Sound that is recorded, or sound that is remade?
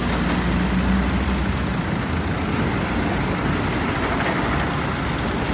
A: recorded